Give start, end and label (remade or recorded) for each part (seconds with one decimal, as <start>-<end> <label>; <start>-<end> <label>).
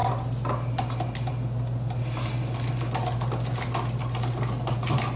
0.0-5.2 recorded